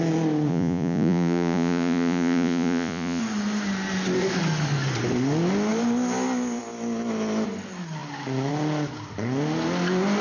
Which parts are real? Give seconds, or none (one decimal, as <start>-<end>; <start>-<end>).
0.0-0.5; 3.2-10.2

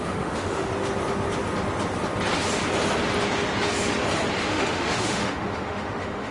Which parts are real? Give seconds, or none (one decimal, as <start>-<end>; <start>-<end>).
0.7-4.5

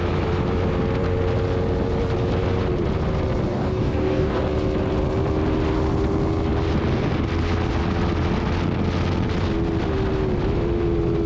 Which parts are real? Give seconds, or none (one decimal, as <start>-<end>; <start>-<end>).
0.0-3.5; 4.4-11.3

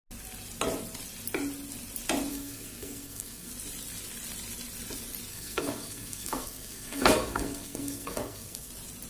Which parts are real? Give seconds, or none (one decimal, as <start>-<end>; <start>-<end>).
0.0-2.3; 3.5-5.3; 8.7-9.1

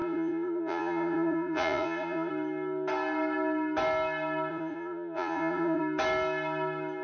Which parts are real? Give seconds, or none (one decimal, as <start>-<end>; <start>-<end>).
2.3-4.5; 5.8-7.0

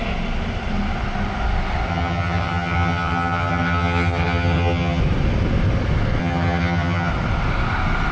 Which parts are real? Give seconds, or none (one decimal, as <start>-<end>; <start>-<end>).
0.0-1.9; 5.0-6.2; 7.1-8.1